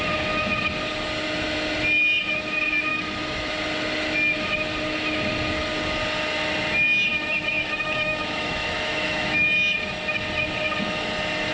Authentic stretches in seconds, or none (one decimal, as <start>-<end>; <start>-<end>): 0.0-2.9; 3.5-7.1; 9.5-11.5